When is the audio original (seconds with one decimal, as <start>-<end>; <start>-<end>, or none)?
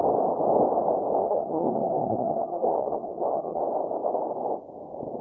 0.0-1.2; 3.6-5.2